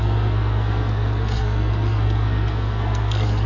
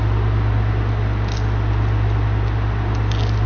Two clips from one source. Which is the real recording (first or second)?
second